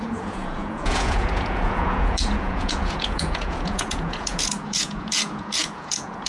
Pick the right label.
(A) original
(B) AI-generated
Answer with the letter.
B